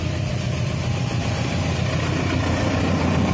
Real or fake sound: fake